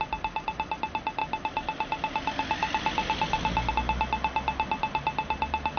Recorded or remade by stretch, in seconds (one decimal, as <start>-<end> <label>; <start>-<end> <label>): 0.0-5.8 recorded